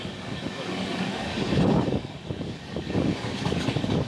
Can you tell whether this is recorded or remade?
remade